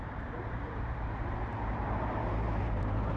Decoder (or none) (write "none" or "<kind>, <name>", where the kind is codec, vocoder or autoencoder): vocoder, BigVGAN v2